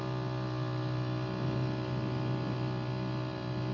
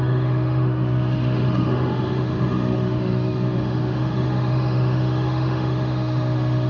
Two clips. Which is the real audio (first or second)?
first